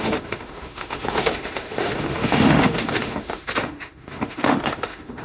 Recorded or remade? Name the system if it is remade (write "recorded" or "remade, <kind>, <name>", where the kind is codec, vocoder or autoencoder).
remade, autoencoder, DAC-VAE